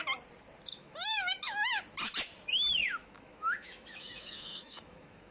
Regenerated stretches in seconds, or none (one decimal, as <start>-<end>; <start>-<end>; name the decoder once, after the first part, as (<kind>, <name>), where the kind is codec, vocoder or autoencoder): 0.7-1.7 (autoencoder, DAC-VAE); 2.8-5.3